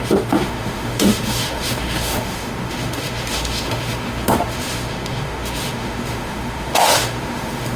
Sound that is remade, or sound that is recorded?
remade